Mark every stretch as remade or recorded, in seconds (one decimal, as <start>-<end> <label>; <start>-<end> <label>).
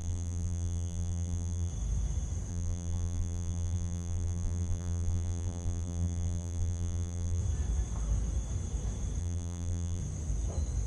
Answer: 0.0-1.7 remade; 1.7-2.5 recorded; 2.5-7.4 remade; 7.4-9.2 recorded; 9.2-10.0 remade; 10.0-10.9 recorded